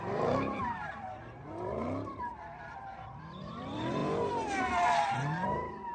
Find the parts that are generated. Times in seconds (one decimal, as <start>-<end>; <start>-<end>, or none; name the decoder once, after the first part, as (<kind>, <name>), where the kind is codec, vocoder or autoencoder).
0.0-4.0 (vocoder, BigVGAN v2); 5.1-5.9